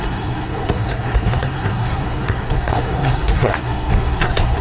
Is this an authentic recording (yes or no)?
no